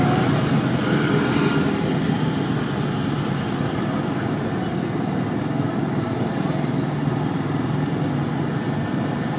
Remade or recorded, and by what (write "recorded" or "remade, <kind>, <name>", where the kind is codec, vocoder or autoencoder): recorded